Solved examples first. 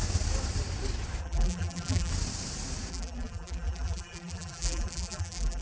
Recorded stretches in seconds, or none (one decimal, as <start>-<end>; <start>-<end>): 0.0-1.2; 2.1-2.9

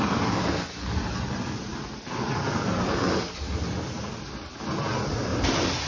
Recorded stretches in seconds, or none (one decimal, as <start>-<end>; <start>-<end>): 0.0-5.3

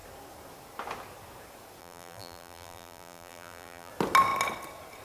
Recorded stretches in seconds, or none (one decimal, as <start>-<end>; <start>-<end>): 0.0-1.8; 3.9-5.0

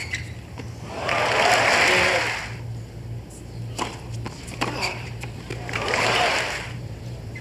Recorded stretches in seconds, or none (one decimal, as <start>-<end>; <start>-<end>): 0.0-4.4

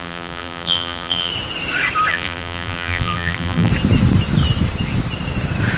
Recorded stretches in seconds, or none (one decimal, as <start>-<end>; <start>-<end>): 1.3-2.1; 3.7-5.8

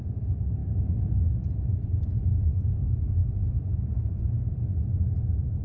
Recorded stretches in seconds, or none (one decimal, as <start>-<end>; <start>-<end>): 0.0-3.2

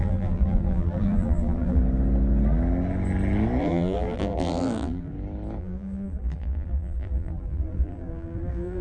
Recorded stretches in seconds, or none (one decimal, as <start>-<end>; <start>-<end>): 1.8-3.6; 5.1-5.6

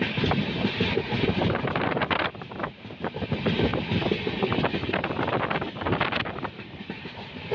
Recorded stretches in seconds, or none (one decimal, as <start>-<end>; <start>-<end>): 3.7-6.3